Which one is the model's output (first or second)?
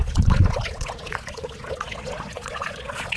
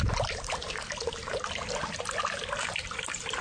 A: first